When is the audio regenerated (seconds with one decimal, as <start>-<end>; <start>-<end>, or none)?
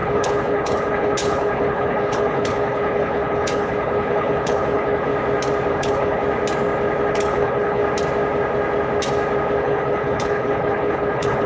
0.0-5.1; 5.7-6.2; 7.1-7.8; 9.6-11.5